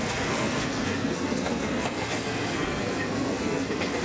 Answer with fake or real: fake